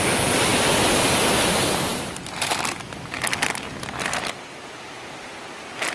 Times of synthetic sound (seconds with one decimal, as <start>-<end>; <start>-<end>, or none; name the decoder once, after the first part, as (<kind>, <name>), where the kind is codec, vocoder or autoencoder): none